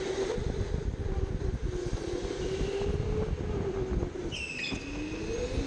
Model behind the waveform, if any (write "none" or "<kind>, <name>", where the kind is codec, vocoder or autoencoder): none